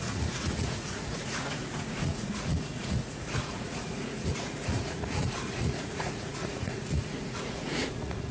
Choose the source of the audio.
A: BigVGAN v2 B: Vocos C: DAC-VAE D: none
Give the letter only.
B